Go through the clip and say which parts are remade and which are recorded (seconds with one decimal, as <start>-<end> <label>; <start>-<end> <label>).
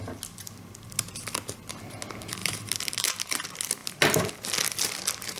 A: 0.0-2.4 recorded; 2.4-3.3 remade; 3.3-5.4 recorded